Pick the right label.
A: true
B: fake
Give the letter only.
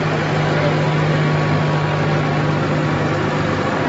A